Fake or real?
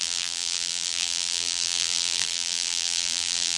fake